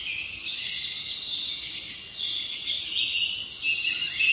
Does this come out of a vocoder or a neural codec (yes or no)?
no